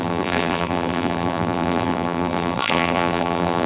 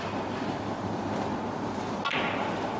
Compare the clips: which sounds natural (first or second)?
second